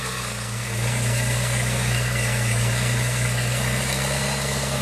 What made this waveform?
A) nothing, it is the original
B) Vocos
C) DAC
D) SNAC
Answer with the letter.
D